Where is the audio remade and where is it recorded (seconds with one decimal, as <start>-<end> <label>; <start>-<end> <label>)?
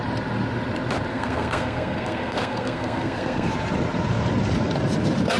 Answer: 0.0-1.1 recorded; 1.1-3.5 remade; 3.5-5.4 recorded